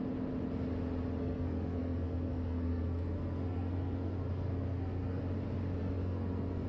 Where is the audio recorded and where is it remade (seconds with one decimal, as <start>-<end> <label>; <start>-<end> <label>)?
0.0-1.2 recorded; 1.2-5.2 remade; 5.2-5.8 recorded; 5.8-6.7 remade